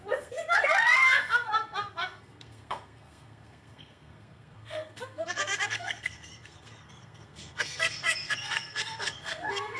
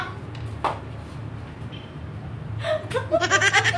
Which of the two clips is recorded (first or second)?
second